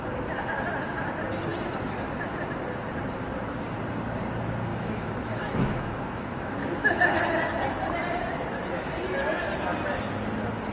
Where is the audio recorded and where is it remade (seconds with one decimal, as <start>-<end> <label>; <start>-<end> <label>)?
0.0-4.7 recorded; 4.7-7.2 remade; 7.2-10.7 recorded